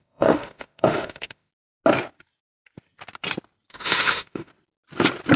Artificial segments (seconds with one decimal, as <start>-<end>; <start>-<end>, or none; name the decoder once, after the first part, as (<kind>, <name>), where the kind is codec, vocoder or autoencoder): 0.0-1.5 (autoencoder, DAC-VAE); 3.7-4.5